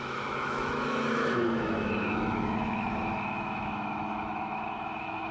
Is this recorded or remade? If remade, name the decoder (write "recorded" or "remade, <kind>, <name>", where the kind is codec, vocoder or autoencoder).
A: remade, autoencoder, DAC-VAE